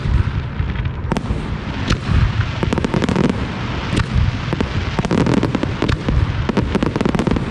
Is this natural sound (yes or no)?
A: yes